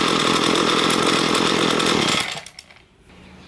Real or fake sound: real